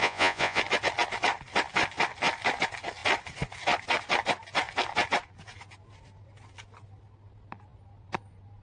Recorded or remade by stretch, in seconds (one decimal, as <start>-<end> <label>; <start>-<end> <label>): 0.0-0.6 remade; 0.6-8.6 recorded